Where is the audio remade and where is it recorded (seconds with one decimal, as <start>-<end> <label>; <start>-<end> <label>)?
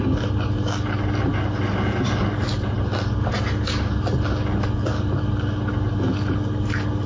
0.0-7.1 recorded